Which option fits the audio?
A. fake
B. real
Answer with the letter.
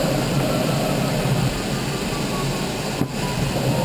B